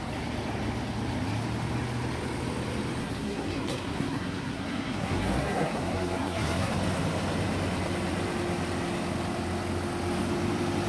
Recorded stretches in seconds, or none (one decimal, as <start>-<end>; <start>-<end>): 0.0-3.0; 6.7-10.9